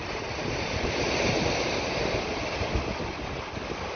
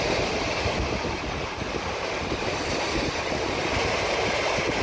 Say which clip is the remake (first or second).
second